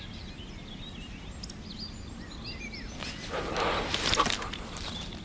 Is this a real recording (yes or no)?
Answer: yes